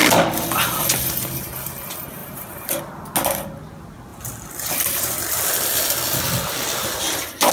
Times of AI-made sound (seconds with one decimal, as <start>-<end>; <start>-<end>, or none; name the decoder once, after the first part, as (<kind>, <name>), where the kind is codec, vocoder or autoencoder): 2.2-2.8 (vocoder, BigVGAN v2)